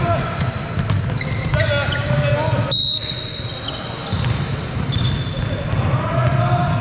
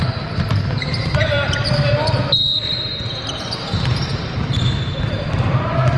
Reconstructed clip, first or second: second